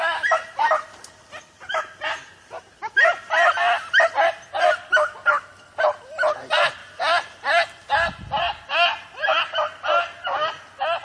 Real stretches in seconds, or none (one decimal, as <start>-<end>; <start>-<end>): 0.0-11.0